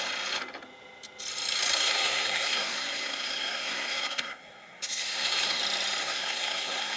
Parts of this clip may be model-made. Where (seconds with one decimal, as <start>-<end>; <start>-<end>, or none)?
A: 1.7-5.6; 6.0-7.0